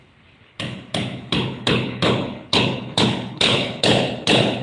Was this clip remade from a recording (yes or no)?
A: yes